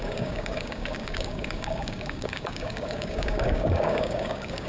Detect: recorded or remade remade